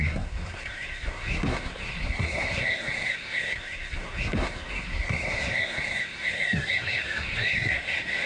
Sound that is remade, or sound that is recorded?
remade